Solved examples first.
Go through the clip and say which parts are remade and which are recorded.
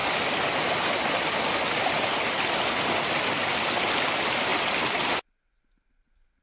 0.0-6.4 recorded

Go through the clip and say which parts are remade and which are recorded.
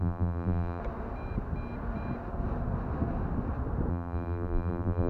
0.0-0.8 remade; 0.8-3.9 recorded; 3.9-5.1 remade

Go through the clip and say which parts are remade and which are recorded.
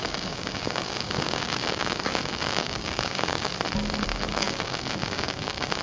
0.0-3.5 remade; 3.5-4.1 recorded; 4.1-5.8 remade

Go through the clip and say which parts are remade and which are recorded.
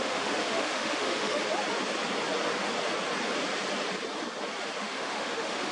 0.0-1.4 remade; 1.4-4.8 recorded; 4.8-5.7 remade